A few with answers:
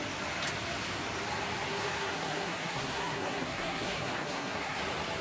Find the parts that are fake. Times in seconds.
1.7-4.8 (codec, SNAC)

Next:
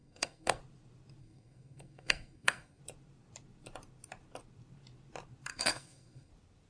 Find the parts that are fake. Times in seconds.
0.0-0.6 (codec, SNAC); 1.2-2.8; 5.5-6.3